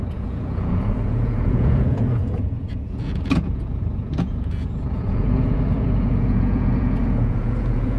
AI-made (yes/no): yes